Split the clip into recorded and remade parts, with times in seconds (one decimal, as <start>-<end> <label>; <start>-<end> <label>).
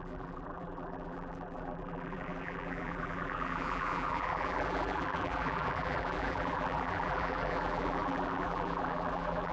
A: 0.0-9.5 remade